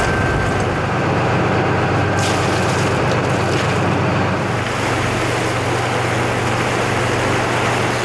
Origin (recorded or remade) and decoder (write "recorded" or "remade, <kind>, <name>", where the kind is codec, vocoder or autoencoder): recorded